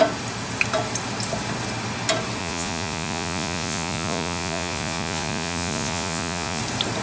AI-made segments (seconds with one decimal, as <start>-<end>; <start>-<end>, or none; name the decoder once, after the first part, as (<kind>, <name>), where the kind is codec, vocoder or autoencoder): 2.4-6.6 (vocoder, Vocos)